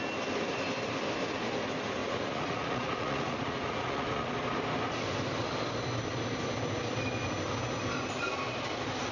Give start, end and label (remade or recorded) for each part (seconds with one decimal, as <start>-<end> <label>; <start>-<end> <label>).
0.0-2.0 recorded; 2.0-4.3 remade; 4.3-9.1 recorded